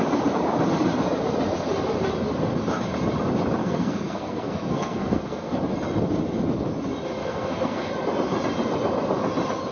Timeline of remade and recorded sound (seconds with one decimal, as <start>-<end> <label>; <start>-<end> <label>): 0.0-3.6 recorded; 3.6-5.6 remade; 5.6-7.2 recorded; 7.2-7.9 remade; 7.9-9.7 recorded